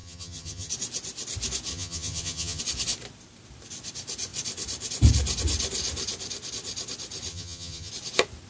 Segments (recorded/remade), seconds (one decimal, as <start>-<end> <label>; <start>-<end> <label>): 0.0-0.7 remade; 0.7-1.7 recorded; 1.7-2.6 remade; 2.6-7.3 recorded; 7.3-7.9 remade; 7.9-8.5 recorded